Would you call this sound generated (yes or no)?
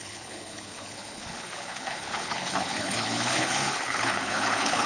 yes